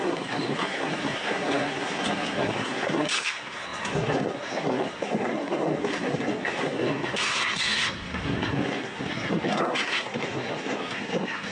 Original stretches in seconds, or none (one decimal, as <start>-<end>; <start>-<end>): none

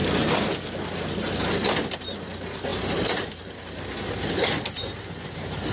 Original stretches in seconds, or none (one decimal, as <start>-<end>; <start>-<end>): 0.0-5.7

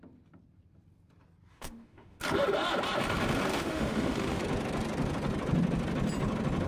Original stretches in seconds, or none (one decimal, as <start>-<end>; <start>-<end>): 0.0-1.5; 2.2-3.5; 4.4-6.7

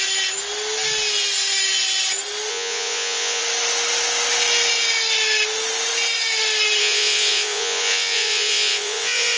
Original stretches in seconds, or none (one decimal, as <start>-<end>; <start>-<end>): 0.0-2.5; 3.4-6.8